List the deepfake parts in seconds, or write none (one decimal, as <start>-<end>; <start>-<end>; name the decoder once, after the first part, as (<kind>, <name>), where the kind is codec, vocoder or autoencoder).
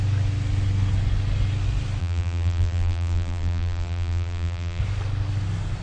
2.0-4.8 (vocoder, BigVGAN v2)